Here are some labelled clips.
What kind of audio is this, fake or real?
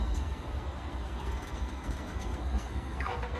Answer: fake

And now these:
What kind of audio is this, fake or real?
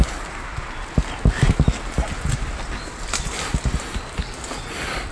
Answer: real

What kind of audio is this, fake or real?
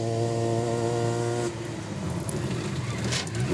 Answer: real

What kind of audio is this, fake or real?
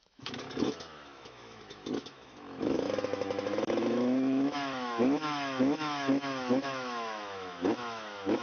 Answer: fake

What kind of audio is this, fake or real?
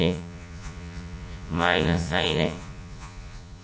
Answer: fake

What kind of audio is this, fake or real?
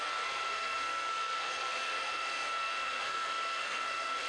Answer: fake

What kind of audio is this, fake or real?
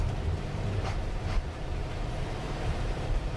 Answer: fake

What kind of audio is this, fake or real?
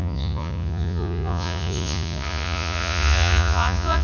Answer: fake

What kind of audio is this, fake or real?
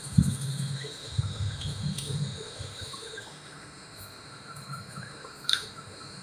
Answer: fake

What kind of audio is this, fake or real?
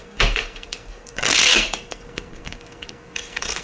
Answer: fake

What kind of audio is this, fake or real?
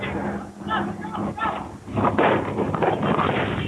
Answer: real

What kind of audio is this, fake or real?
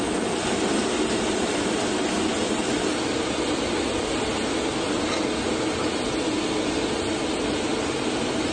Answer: real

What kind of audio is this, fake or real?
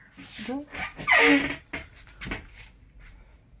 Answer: real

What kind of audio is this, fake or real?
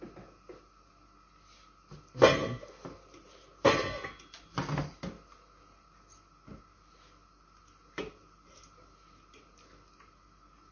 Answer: real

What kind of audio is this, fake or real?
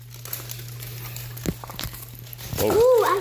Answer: real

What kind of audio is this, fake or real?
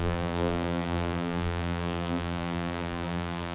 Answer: fake